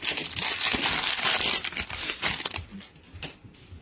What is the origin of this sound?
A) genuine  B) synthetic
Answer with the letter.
A